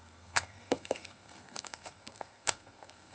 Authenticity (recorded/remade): remade